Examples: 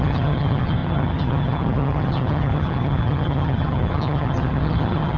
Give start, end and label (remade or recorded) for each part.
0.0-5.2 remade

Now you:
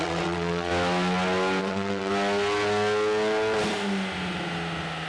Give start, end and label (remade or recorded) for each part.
0.0-0.7 remade; 0.7-1.6 recorded; 1.6-2.1 remade; 2.1-5.1 recorded